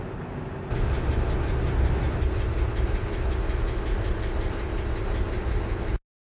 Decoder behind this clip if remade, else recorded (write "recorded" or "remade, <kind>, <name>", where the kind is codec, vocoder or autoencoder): recorded